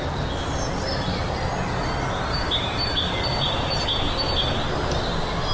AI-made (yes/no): no